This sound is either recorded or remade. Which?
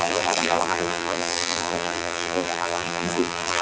remade